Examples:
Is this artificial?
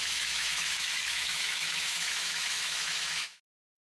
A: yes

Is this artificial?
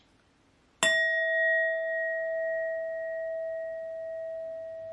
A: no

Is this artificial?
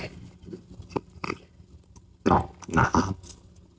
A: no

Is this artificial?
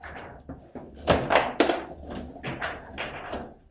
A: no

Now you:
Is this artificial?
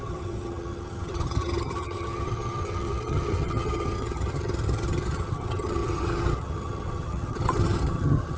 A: yes